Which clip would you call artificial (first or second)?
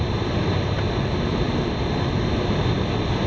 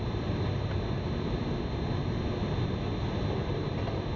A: first